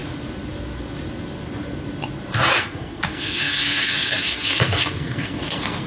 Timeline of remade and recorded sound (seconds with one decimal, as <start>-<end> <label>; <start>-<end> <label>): 0.0-2.5 recorded; 2.5-5.9 remade